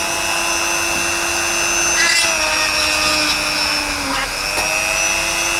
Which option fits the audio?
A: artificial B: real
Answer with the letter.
B